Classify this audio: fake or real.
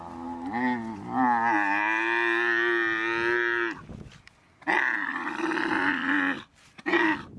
real